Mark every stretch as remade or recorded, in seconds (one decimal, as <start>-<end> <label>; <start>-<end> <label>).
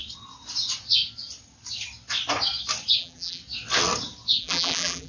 0.0-3.0 recorded; 3.0-3.4 remade; 3.4-4.4 recorded; 4.4-5.1 remade